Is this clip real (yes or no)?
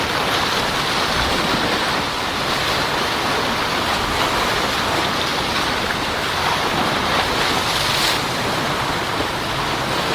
yes